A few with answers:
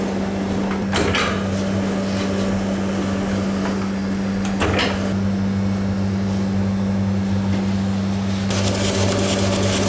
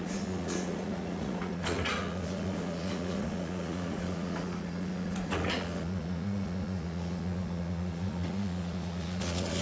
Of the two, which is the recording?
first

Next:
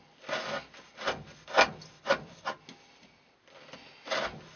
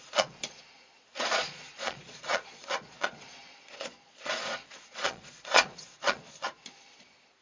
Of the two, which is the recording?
first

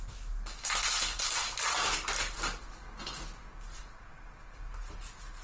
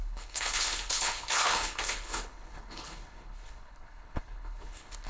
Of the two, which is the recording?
first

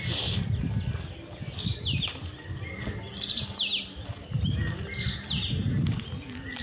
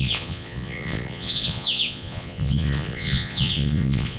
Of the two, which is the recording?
first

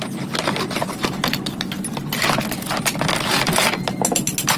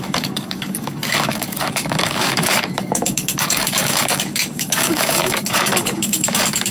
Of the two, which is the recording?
first